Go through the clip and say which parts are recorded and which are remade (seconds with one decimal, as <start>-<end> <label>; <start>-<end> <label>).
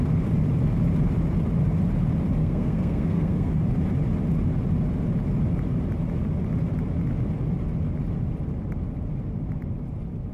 0.0-2.4 recorded; 2.4-3.5 remade; 3.5-10.3 recorded